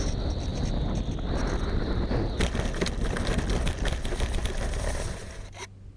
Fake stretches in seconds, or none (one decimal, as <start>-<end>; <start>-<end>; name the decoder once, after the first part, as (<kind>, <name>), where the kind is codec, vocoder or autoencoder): none